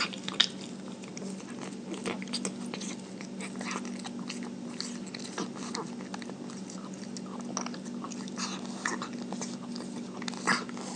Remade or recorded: recorded